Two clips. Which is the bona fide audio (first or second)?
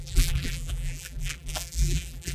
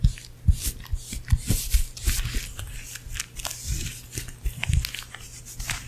second